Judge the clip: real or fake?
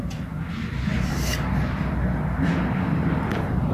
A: fake